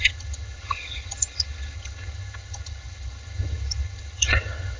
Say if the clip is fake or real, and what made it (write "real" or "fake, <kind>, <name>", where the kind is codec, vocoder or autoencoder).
fake, vocoder, HiFi-GAN